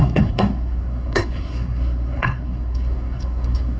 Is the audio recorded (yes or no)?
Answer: no